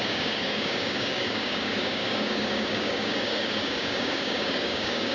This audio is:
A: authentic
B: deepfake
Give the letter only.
B